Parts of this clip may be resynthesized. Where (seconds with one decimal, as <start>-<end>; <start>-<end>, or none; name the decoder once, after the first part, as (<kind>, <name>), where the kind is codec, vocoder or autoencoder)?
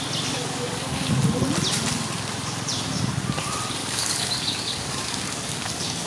0.4-1.2 (codec, DAC); 3.8-6.1